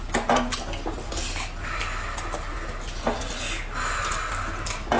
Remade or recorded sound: recorded